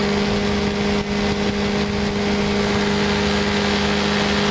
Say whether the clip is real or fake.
real